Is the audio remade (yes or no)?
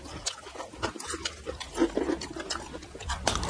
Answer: no